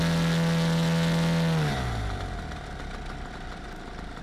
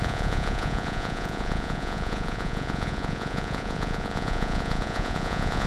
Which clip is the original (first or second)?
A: first